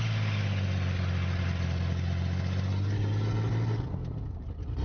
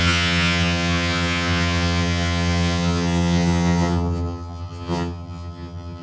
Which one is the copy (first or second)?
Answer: second